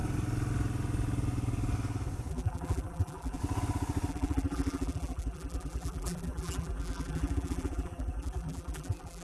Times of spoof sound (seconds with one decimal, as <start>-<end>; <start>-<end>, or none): 2.3-3.4; 4.1-9.2